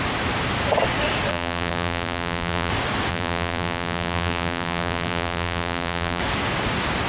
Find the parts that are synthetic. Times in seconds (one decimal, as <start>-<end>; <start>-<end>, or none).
1.3-2.7; 3.1-6.2